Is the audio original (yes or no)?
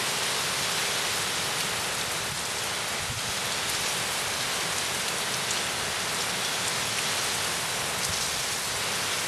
yes